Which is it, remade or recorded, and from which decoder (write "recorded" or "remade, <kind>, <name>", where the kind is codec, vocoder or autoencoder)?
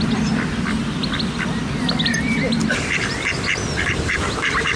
recorded